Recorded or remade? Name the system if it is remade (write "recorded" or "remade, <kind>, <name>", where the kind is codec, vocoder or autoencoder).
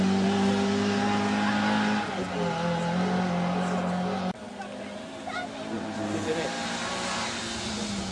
recorded